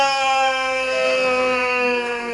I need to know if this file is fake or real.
fake